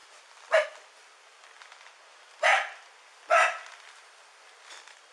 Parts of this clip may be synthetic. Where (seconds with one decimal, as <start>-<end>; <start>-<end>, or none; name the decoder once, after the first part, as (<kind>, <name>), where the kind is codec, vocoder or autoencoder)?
none